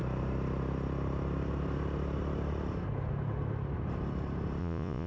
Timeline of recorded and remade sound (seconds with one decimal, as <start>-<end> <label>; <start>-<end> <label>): 0.0-4.6 recorded; 4.6-5.1 remade